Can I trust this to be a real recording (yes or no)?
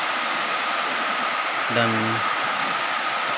yes